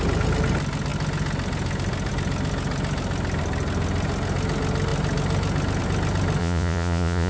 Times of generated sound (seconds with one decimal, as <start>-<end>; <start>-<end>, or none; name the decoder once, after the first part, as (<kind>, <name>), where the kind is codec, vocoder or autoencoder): 6.4-7.3 (vocoder, Vocos)